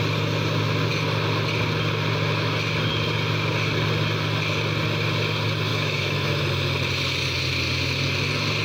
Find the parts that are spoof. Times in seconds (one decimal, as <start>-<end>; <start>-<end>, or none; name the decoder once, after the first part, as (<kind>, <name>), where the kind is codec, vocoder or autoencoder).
5.7-6.4 (autoencoder, DAC-VAE)